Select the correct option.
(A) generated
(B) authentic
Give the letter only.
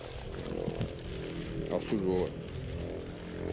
B